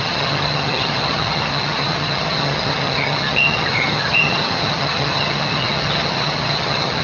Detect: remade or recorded remade